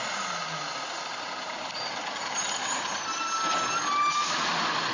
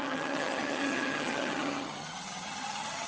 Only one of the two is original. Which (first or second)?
first